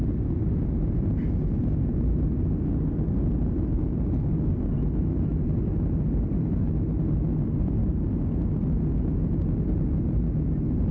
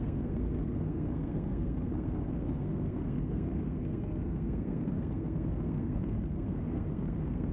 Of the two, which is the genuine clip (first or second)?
first